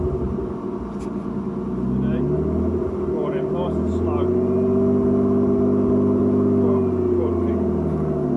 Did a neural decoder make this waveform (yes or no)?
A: no